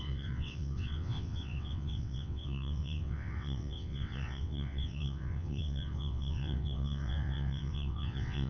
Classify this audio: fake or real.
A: fake